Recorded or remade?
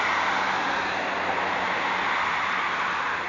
recorded